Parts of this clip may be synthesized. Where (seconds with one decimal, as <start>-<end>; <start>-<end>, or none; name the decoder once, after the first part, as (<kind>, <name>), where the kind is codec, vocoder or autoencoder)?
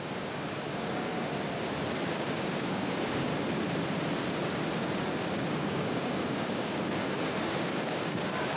0.0-1.1 (codec, DAC); 2.1-3.3; 5.2-8.6